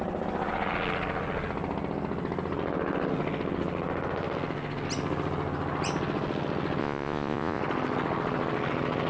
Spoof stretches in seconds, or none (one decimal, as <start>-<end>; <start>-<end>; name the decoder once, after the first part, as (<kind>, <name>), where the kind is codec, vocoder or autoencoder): 6.8-7.6 (vocoder, Vocos)